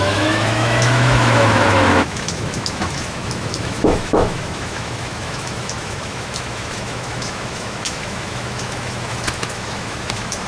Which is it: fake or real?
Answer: fake